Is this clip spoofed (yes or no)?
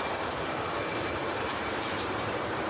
yes